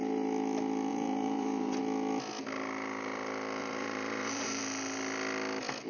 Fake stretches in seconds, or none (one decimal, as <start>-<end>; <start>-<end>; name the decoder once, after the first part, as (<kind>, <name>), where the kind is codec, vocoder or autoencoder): 0.9-1.8 (vocoder, BigVGAN v2); 3.6-4.6